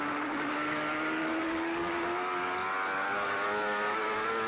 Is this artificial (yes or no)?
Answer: yes